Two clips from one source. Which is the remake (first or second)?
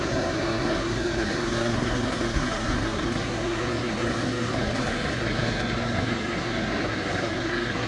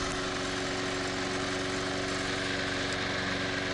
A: first